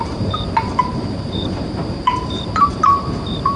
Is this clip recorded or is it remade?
remade